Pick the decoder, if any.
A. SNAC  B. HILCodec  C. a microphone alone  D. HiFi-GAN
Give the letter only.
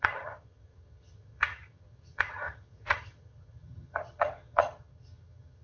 D